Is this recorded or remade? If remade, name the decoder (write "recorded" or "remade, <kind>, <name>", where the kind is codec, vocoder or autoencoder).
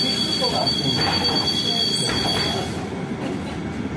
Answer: recorded